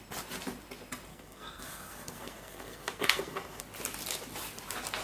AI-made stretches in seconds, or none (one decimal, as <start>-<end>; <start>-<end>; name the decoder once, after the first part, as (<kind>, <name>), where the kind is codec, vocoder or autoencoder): 1.1-3.6 (codec, SNAC)